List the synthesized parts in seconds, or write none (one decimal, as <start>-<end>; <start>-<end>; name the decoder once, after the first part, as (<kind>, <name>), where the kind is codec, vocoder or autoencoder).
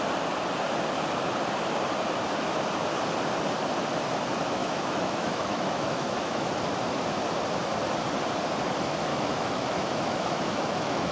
4.6-6.5 (autoencoder, DAC-VAE); 9.1-11.1